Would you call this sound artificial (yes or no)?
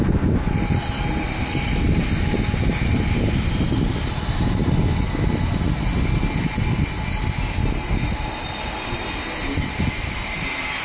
no